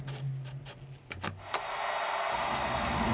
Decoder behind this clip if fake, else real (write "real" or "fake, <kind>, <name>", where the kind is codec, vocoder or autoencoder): real